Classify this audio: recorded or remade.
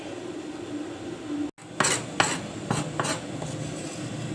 recorded